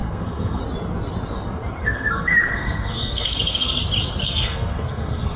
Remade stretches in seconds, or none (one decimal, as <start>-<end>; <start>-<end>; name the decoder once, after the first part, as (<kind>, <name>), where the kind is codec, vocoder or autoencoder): 0.0-0.6 (codec, SNAC); 1.8-3.8; 4.2-5.4